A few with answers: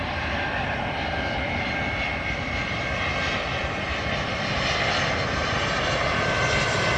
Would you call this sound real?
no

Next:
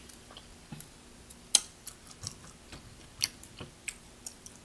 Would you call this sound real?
yes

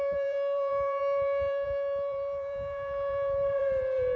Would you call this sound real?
no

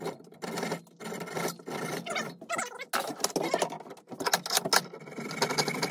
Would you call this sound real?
yes